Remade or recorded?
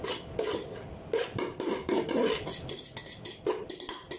recorded